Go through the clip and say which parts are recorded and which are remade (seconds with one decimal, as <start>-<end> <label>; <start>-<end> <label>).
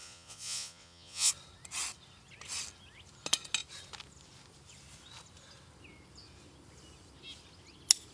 0.0-1.3 remade; 1.3-8.1 recorded